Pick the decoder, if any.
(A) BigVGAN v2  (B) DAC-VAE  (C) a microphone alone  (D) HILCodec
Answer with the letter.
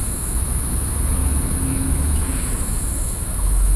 B